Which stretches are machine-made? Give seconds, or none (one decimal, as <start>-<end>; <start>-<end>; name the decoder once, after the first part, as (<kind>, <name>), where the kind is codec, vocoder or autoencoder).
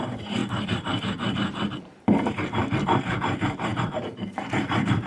0.0-5.1 (vocoder, BigVGAN v2)